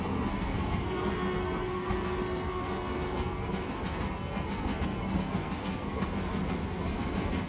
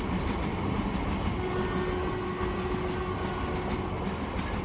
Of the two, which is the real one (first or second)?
second